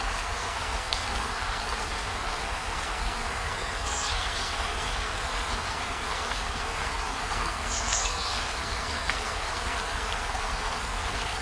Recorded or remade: remade